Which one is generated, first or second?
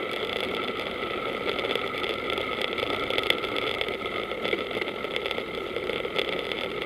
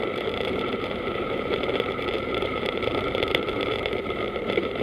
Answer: second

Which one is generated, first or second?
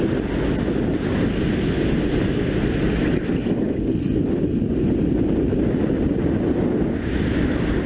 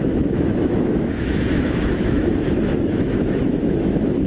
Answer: second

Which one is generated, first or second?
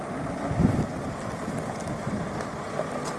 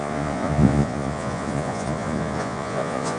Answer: second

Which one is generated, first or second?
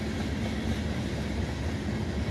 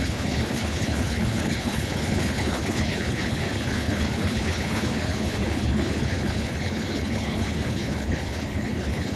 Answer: second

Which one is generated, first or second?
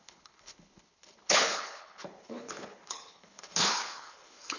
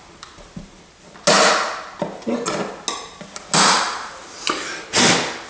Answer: first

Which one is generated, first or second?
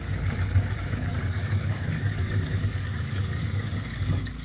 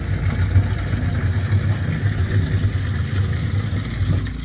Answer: first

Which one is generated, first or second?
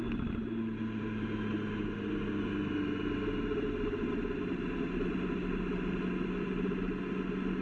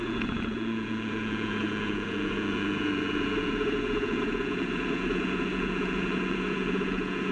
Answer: second